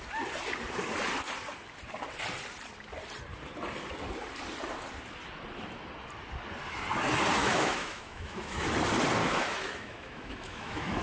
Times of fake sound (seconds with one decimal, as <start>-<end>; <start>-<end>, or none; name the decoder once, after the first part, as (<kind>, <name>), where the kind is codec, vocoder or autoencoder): 7.4-8.7 (autoencoder, DAC-VAE); 9.2-11.0